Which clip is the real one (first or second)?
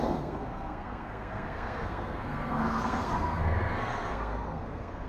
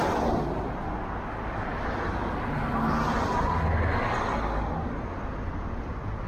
second